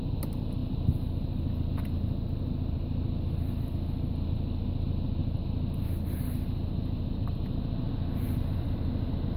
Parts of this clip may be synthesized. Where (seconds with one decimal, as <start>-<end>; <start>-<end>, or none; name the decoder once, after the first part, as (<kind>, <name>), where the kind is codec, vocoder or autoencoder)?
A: none

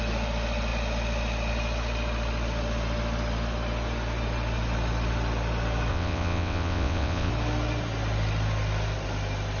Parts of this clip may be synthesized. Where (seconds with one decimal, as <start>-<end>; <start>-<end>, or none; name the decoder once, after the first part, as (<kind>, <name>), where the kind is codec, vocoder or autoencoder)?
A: 5.9-7.3 (vocoder, WaveNeXt)